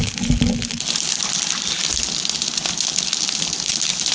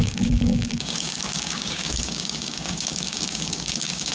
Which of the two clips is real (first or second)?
first